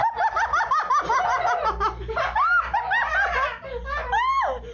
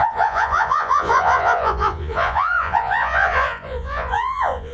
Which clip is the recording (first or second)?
first